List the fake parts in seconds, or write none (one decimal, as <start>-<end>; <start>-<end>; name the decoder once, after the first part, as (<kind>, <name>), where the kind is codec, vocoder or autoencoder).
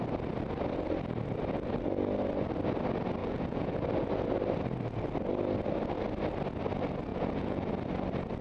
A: 3.2-3.7 (vocoder, Vocos); 7.1-7.7